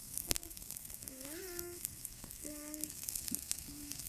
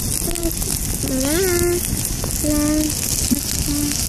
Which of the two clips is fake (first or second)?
first